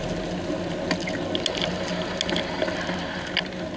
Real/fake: real